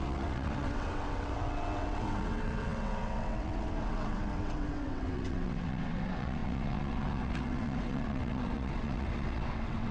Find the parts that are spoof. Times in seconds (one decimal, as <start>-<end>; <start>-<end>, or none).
0.0-9.9

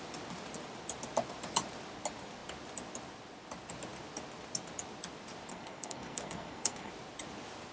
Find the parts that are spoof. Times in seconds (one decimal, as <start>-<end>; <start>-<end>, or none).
5.5-6.9

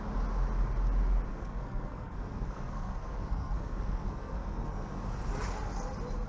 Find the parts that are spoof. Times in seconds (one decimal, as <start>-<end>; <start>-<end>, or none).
1.3-5.0

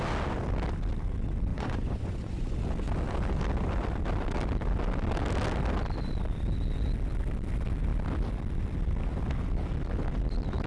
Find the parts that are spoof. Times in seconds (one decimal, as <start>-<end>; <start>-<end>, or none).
1.5-2.6

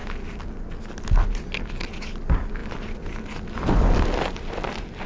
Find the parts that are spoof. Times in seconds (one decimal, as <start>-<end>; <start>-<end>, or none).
none

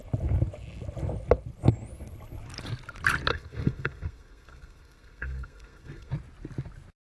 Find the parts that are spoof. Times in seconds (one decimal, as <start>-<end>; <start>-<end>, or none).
3.3-6.1

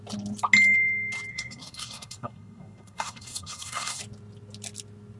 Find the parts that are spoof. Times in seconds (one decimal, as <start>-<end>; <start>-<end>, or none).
1.3-4.0